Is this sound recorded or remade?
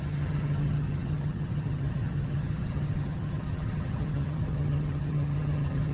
remade